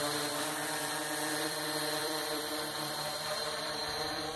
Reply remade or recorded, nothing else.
remade